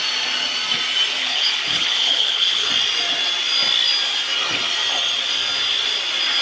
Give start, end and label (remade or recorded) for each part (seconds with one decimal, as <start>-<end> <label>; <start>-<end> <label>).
0.0-1.2 recorded; 1.2-2.7 remade; 2.7-6.4 recorded